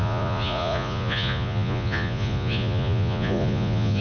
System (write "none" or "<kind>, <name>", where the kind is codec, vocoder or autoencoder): vocoder, Vocos